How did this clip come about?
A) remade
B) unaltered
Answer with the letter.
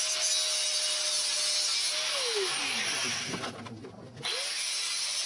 B